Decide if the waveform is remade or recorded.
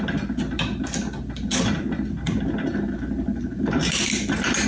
recorded